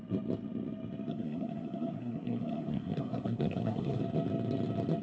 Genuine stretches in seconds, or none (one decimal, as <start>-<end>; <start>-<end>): 0.0-1.1; 4.0-5.0